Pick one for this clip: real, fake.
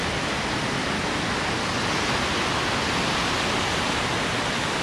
real